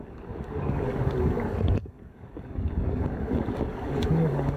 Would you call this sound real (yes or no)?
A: no